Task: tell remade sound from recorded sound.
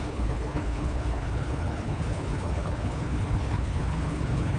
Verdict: remade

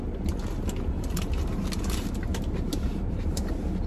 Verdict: recorded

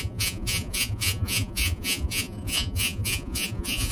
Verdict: remade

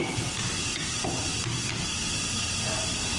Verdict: recorded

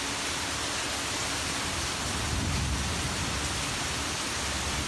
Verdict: recorded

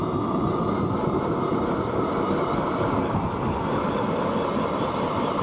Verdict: recorded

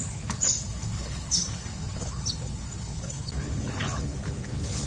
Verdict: remade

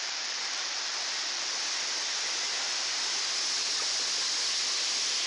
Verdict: remade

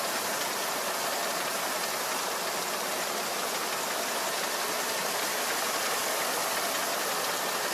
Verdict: recorded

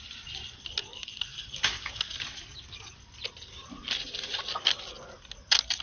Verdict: recorded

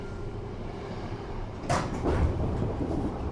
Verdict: remade